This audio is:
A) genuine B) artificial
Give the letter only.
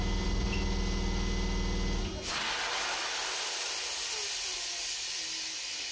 A